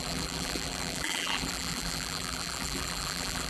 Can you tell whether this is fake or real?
fake